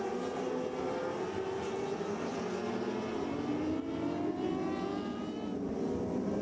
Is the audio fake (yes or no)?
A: no